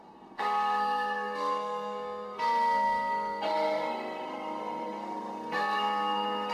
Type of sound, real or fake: fake